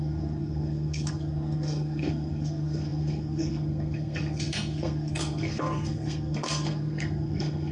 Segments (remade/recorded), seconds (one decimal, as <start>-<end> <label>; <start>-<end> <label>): 0.0-7.7 remade